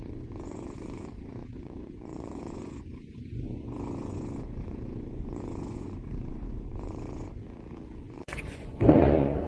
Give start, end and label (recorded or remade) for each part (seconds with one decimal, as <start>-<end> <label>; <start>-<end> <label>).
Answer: 0.0-7.4 remade; 7.4-8.0 recorded; 8.0-9.5 remade